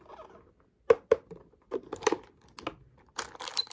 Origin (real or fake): real